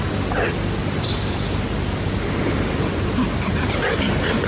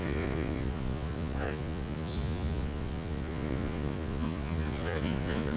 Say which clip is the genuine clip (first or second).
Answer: first